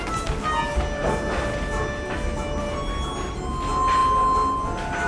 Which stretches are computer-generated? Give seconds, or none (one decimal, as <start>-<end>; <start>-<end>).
none